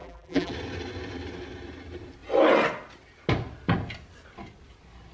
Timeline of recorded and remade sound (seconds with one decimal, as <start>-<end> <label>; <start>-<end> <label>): 0.0-0.5 remade; 0.5-5.1 recorded